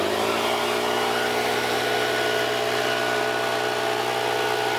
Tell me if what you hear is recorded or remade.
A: recorded